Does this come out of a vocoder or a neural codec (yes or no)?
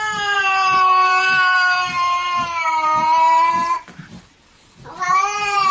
yes